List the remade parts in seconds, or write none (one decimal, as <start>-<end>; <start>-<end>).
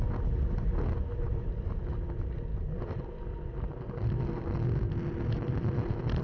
none